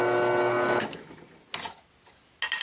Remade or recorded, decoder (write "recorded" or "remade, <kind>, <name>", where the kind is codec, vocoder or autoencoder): recorded